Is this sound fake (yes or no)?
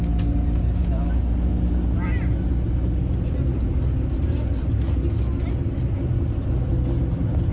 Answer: no